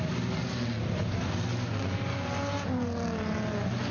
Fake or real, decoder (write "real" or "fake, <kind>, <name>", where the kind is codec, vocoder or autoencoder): real